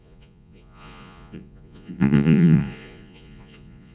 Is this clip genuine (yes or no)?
no